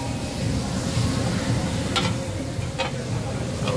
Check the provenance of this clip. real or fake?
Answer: real